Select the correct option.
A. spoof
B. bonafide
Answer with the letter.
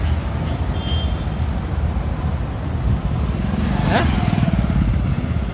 B